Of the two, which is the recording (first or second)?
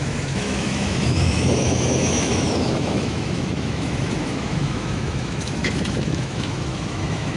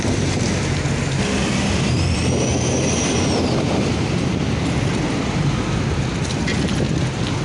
second